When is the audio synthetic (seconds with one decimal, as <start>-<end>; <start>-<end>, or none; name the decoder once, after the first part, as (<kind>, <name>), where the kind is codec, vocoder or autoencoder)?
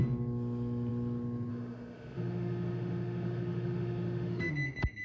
1.5-4.5 (autoencoder, DAC-VAE)